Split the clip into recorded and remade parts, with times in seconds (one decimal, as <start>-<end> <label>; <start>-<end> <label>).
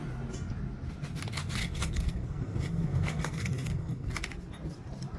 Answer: 0.0-1.6 recorded; 1.6-4.1 remade; 4.1-5.2 recorded